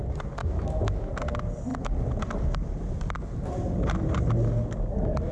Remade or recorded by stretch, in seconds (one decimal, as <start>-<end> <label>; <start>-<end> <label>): 0.0-0.4 recorded; 0.4-1.1 remade; 1.1-5.3 recorded